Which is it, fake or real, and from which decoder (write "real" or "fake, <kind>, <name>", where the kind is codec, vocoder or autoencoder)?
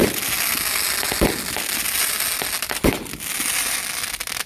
real